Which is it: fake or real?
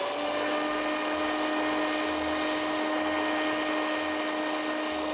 real